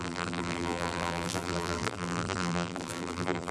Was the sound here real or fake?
fake